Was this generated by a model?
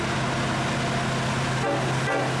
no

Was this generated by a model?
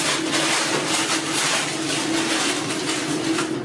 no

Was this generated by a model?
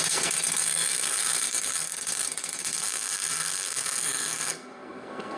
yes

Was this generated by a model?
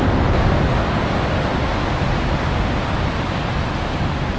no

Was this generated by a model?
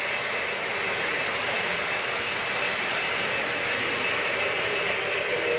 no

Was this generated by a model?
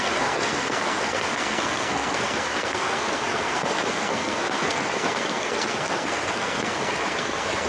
yes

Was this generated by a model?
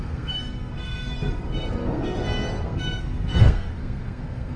yes